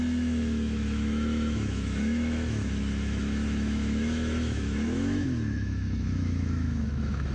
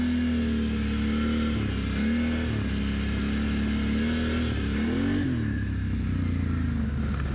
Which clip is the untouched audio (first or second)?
second